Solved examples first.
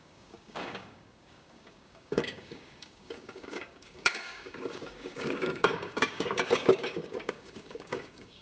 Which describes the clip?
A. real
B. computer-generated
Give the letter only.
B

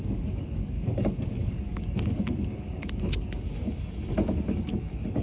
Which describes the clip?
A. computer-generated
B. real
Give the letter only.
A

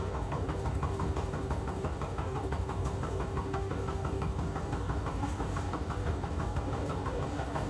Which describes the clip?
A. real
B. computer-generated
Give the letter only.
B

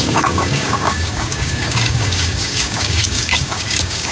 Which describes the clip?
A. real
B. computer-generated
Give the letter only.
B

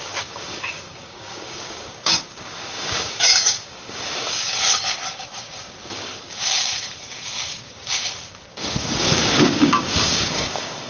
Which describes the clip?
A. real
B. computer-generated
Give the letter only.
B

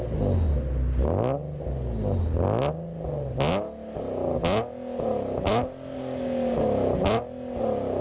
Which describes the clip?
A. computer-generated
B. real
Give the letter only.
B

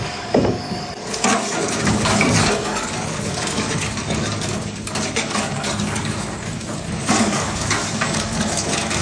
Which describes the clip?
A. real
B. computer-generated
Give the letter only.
B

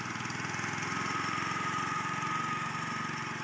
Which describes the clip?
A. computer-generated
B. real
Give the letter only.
B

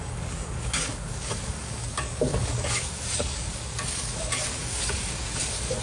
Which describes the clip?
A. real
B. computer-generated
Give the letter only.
B